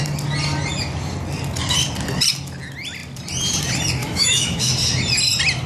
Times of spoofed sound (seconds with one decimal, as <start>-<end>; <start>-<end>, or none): 4.0-4.7